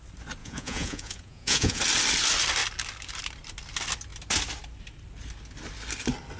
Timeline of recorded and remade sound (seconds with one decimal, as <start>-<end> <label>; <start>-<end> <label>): 0.0-0.4 recorded; 0.4-1.8 remade; 1.8-6.4 recorded